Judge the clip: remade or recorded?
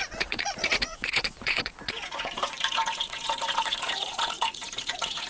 remade